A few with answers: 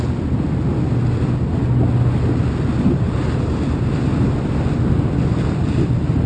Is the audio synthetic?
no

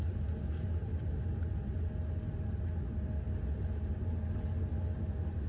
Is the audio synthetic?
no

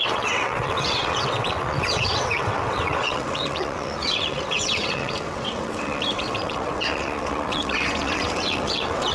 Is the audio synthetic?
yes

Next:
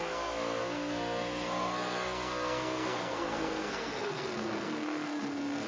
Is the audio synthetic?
yes